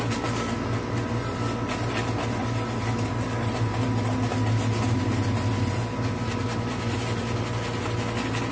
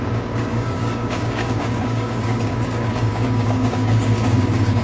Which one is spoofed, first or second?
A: second